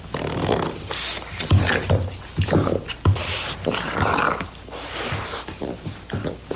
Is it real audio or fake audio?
real